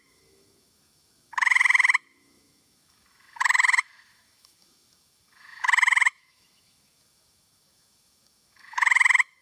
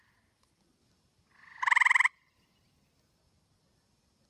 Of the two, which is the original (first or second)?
second